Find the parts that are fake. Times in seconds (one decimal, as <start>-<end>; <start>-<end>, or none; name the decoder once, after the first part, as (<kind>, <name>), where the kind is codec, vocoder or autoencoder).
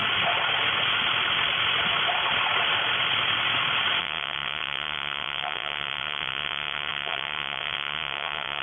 4.0-8.6 (vocoder, WaveNeXt)